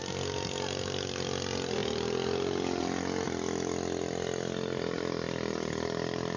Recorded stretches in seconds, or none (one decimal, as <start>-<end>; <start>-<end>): 0.0-6.4